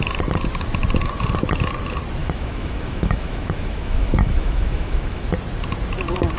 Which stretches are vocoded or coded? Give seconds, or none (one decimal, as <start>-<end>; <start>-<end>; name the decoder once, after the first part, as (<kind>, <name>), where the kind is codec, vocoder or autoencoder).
2.2-5.2 (autoencoder, DAC-VAE)